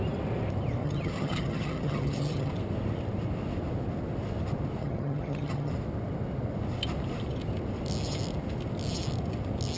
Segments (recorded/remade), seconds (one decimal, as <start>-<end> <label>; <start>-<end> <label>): 0.0-0.8 recorded; 0.8-2.5 remade; 2.5-4.8 recorded; 4.8-5.7 remade; 5.7-9.8 recorded